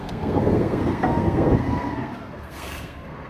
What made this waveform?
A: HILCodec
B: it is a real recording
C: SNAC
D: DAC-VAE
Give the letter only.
C